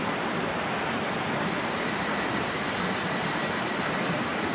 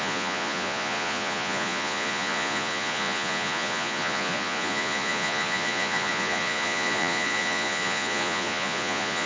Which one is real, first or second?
first